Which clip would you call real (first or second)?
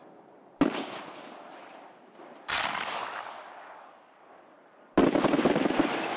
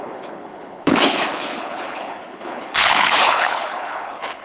first